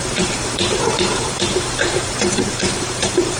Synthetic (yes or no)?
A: yes